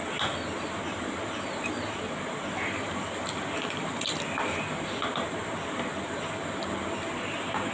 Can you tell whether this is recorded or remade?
recorded